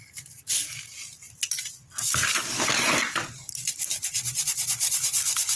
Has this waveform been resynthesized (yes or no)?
no